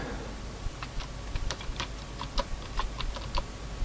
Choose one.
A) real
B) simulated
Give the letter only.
B